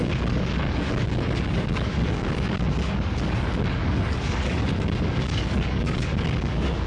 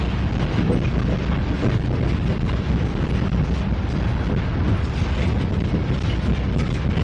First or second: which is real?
second